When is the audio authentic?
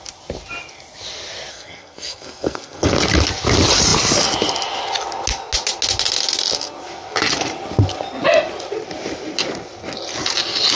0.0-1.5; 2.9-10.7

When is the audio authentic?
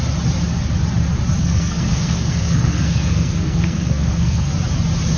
0.0-1.4; 4.5-5.2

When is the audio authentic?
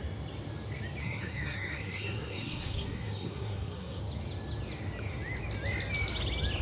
0.0-1.0; 4.0-6.6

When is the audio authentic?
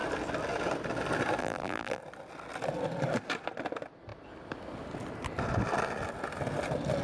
0.0-1.4; 2.0-7.0